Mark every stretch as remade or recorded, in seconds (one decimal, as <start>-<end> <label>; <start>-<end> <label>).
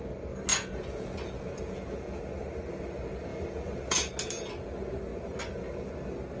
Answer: 0.0-0.5 recorded; 0.5-2.2 remade; 2.2-3.3 recorded; 3.3-4.1 remade; 4.1-6.4 recorded